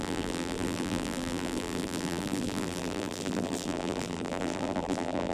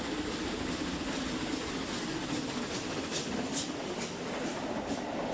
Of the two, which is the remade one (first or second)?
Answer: first